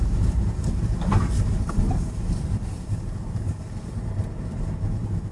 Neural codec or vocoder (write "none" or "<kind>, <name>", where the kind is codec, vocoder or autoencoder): vocoder, BigVGAN v2